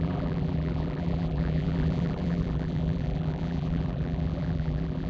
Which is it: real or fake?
fake